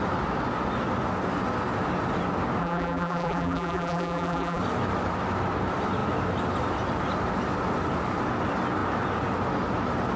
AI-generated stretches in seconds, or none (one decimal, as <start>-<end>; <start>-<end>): 2.6-4.6